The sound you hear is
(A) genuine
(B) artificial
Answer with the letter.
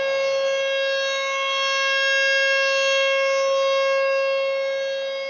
A